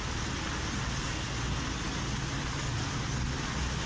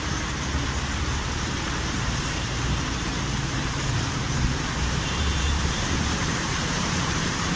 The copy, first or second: second